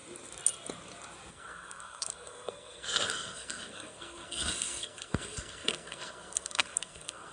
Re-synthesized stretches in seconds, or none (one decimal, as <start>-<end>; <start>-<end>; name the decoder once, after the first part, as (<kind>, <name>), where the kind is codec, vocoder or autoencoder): 1.3-7.3 (codec, SNAC)